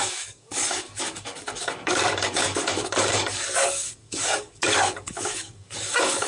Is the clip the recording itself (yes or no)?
no